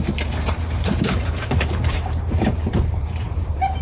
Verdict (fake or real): fake